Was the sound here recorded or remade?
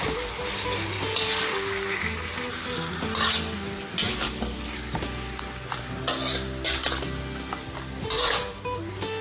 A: recorded